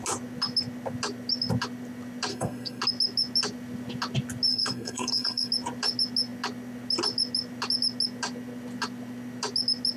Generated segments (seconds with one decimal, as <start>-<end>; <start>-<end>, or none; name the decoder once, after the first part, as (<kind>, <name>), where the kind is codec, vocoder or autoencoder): 2.3-2.8 (codec, SNAC); 4.5-5.5